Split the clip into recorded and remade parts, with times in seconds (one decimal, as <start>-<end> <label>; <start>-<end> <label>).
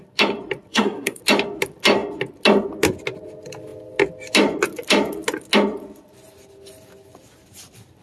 0.0-0.7 recorded; 0.7-1.2 remade; 1.2-8.0 recorded